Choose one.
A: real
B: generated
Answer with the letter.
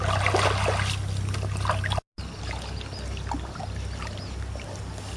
A